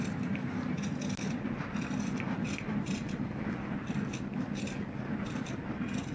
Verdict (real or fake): real